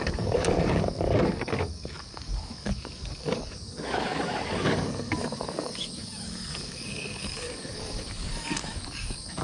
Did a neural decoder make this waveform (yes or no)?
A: yes